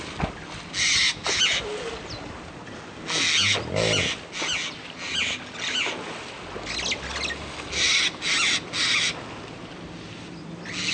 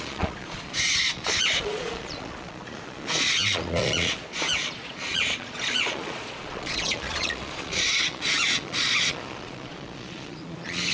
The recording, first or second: first